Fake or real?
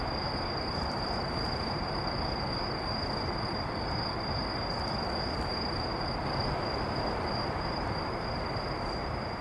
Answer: fake